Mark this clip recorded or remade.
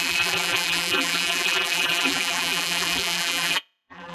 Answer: remade